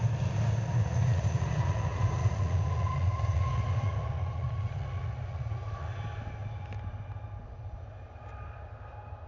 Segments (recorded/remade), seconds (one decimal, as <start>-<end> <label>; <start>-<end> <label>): 0.0-0.7 recorded; 0.7-6.0 remade; 6.0-9.3 recorded